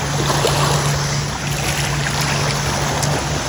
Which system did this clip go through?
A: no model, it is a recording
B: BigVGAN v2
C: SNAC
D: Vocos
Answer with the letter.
A